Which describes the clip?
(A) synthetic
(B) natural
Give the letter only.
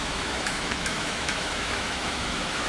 A